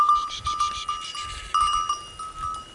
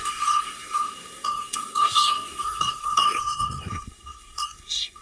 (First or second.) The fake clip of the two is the second